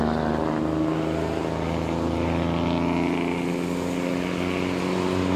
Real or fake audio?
real